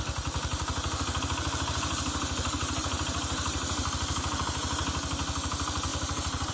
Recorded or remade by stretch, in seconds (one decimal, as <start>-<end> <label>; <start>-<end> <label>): 0.0-2.6 recorded; 2.6-3.9 remade; 3.9-6.5 recorded